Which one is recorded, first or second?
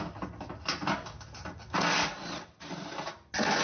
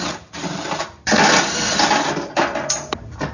first